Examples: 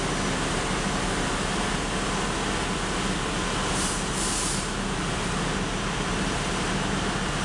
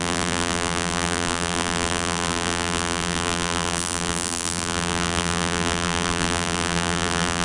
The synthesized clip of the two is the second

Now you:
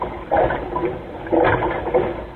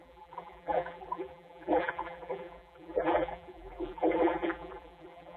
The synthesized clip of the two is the second